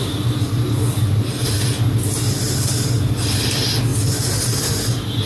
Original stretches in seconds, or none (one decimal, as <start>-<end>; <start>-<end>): 0.0-5.3